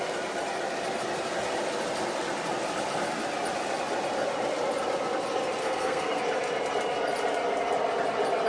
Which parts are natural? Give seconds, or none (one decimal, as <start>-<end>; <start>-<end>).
0.0-5.6; 6.2-8.5

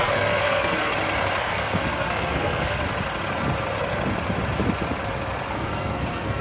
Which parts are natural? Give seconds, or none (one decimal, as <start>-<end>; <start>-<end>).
0.9-1.4; 2.8-5.5

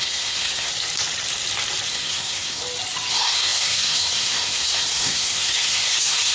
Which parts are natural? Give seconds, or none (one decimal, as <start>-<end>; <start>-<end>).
0.7-1.9; 2.6-3.1

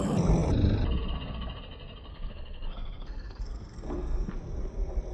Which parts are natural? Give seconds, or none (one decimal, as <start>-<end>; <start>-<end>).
0.0-2.1; 4.3-5.1

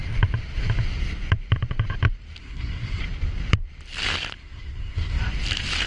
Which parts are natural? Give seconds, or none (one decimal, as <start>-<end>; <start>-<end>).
0.0-2.4; 3.0-4.4; 5.2-5.9

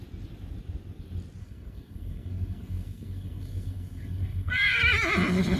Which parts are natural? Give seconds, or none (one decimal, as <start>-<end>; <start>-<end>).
0.0-1.4; 4.8-5.6

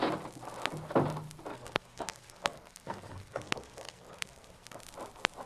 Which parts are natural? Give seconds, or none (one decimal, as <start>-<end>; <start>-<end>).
0.0-1.5; 4.8-5.5

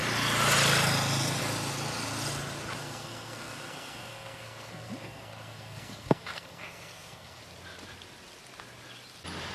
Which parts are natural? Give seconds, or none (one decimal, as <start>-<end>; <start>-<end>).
0.0-2.8; 7.4-9.5